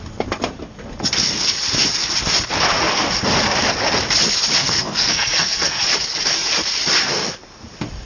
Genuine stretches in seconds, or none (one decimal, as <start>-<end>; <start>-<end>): 0.0-4.6; 5.8-8.1